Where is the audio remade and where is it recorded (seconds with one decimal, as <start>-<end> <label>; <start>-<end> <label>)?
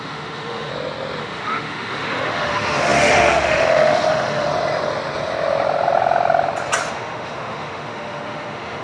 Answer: 0.0-0.7 remade; 0.7-1.2 recorded; 1.2-4.5 remade; 4.5-6.9 recorded; 6.9-8.8 remade